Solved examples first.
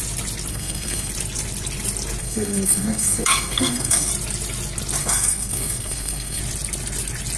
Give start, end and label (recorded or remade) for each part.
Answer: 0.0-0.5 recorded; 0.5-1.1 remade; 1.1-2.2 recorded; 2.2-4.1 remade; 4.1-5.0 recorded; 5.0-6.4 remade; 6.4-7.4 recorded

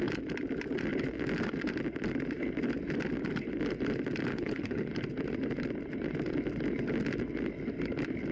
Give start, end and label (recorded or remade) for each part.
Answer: 0.0-4.3 recorded; 4.3-4.9 remade; 4.9-8.3 recorded

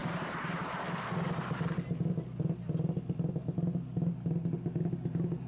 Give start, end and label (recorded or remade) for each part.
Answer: 0.0-5.5 recorded

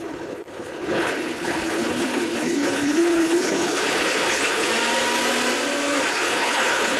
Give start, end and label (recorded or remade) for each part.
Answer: 0.0-4.7 remade; 4.7-6.1 recorded; 6.1-7.0 remade